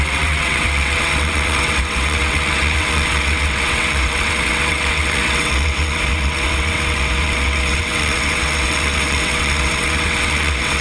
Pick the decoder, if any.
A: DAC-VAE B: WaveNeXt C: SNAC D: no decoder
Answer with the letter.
B